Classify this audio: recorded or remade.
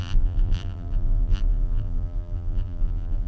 remade